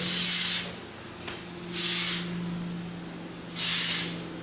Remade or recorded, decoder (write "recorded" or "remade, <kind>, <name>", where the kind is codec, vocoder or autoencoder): recorded